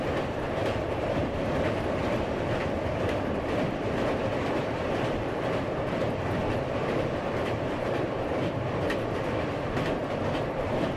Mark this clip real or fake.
fake